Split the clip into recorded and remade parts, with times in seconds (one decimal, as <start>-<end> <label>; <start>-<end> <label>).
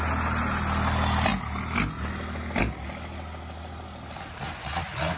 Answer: 0.0-5.2 recorded